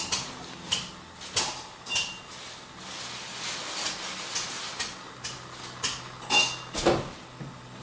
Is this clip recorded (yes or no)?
yes